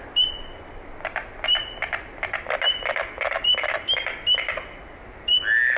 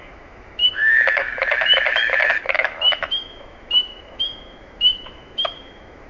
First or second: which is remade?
second